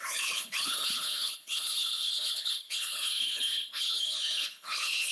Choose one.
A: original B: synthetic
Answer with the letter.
B